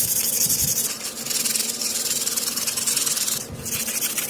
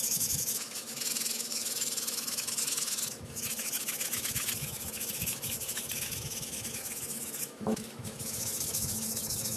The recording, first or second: first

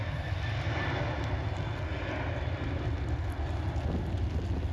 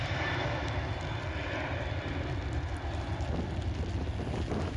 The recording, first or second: first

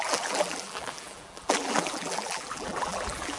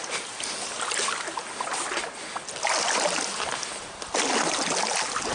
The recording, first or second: second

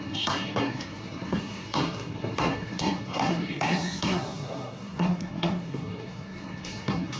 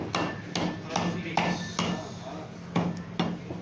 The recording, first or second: second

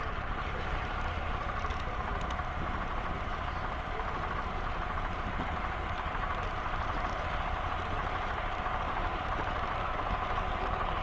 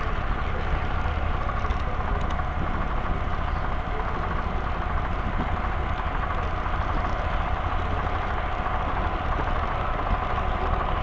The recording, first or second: second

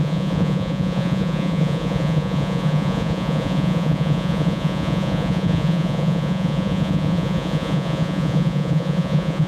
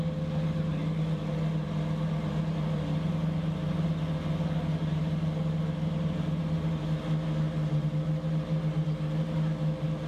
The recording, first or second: second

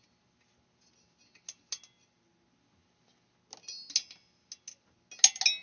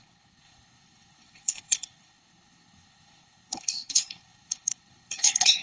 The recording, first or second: first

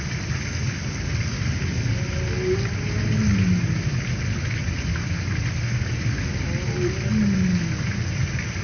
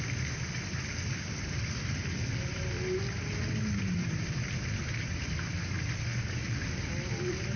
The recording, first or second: first